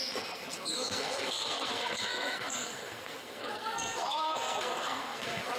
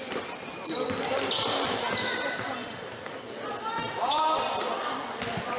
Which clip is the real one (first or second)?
second